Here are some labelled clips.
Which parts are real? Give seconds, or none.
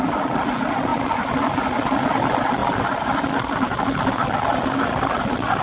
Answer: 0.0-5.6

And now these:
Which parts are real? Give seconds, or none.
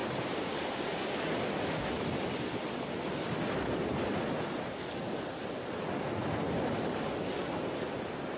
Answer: 0.0-8.4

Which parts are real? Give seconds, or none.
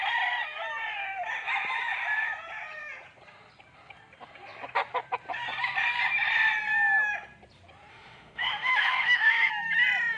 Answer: 0.0-7.9; 9.5-10.2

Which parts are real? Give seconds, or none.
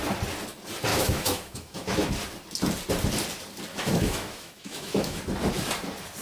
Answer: 0.0-0.9; 2.1-3.7; 5.2-6.2